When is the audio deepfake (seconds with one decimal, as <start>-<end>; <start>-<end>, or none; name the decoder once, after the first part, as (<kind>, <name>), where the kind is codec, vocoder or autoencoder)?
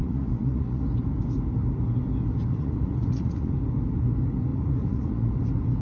0.0-0.8 (vocoder, Vocos); 2.5-3.5; 4.5-5.3